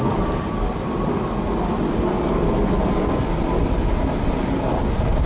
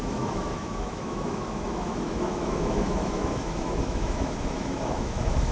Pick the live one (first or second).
first